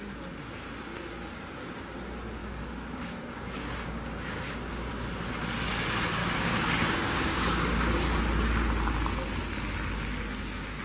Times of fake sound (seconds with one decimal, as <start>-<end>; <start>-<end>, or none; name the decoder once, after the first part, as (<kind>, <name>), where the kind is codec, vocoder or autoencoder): 2.4-4.9 (codec, DAC); 6.2-8.2